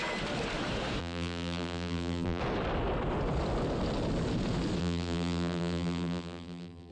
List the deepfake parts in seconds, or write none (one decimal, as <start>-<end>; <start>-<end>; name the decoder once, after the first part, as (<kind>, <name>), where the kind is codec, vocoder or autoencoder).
1.0-2.4 (vocoder, BigVGAN v2); 4.8-6.9